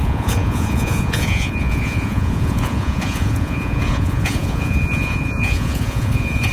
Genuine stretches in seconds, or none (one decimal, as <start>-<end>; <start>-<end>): none

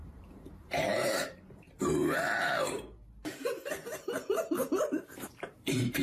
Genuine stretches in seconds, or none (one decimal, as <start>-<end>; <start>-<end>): none